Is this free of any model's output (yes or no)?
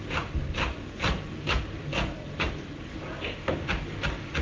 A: yes